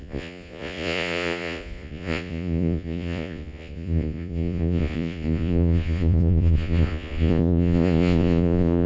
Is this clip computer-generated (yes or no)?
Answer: yes